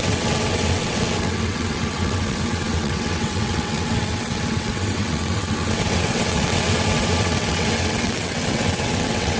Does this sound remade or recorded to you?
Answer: remade